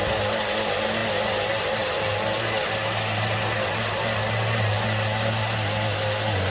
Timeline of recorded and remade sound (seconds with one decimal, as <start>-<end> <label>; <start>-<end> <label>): 0.0-6.5 recorded